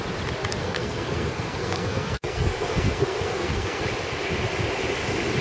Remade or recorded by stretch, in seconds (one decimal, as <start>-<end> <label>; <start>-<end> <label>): 0.0-0.6 recorded; 0.6-3.8 remade; 3.8-5.4 recorded